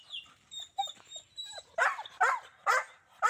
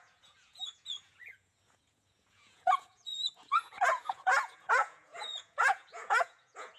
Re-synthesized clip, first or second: second